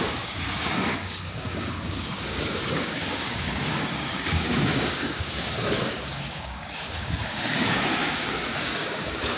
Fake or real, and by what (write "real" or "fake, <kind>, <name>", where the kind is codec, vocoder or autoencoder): fake, codec, DAC